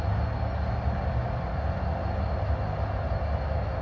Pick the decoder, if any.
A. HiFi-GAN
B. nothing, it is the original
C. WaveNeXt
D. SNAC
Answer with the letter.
B